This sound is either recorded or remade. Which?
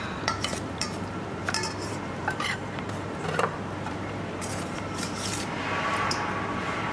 remade